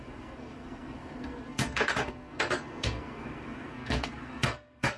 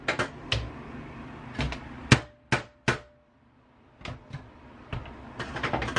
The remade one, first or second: first